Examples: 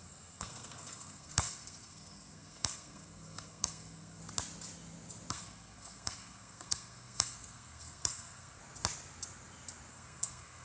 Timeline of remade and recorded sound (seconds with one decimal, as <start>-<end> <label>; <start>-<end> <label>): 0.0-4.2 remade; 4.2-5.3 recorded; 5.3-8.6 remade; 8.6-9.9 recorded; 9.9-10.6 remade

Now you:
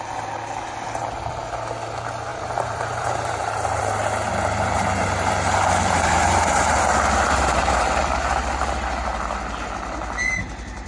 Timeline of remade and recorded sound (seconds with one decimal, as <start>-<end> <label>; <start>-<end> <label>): 0.0-2.3 recorded; 2.3-3.8 remade; 3.8-4.3 recorded; 4.3-8.0 remade; 8.0-10.9 recorded

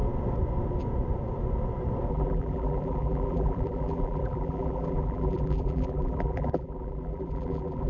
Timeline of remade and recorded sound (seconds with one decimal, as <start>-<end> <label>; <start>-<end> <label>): 0.0-2.1 recorded; 2.1-7.9 remade

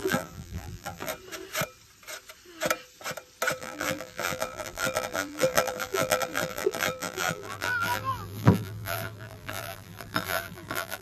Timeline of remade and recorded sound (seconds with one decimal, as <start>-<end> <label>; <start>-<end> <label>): 0.0-1.1 remade; 1.1-3.6 recorded; 3.6-11.0 remade